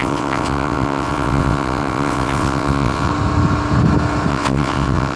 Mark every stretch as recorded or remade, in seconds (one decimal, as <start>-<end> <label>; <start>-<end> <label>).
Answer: 0.0-3.1 remade; 3.1-4.3 recorded; 4.3-5.2 remade